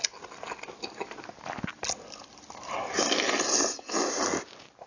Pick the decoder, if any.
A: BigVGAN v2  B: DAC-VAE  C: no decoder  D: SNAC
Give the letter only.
C